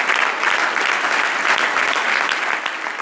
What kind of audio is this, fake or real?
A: real